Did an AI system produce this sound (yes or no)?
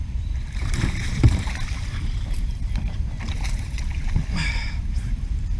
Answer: yes